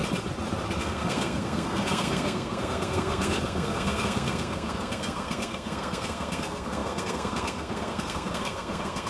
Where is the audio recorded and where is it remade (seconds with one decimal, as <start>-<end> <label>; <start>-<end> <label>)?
0.0-0.8 recorded; 0.8-9.1 remade